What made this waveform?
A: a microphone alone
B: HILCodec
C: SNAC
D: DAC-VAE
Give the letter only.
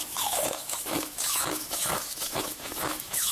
D